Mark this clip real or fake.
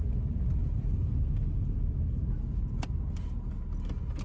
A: real